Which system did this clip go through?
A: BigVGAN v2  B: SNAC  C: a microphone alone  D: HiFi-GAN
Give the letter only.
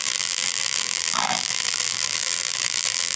A